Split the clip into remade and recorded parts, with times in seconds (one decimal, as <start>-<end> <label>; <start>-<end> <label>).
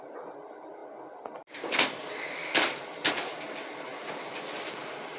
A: 0.0-0.8 remade; 0.8-1.5 recorded; 1.5-5.2 remade